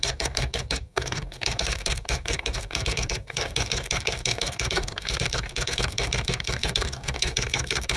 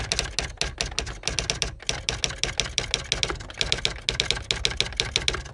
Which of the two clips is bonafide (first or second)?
second